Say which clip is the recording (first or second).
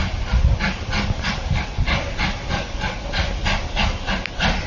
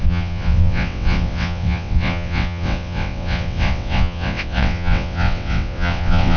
first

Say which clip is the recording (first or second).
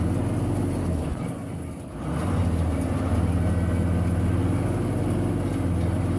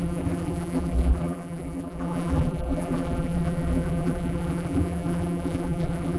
first